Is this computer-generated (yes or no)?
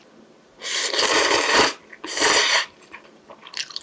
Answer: yes